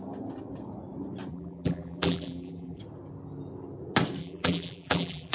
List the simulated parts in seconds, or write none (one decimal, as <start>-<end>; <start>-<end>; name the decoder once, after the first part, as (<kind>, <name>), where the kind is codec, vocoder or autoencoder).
1.3-2.8 (vocoder, BigVGAN v2); 4.2-5.3